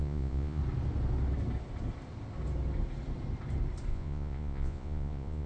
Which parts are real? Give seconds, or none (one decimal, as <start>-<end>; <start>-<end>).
0.6-3.9